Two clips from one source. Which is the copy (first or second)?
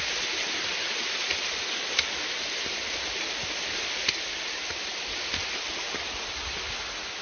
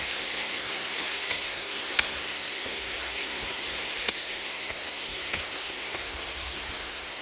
second